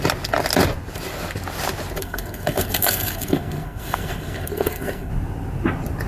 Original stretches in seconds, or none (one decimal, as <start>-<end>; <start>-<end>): 0.0-2.0; 5.1-6.1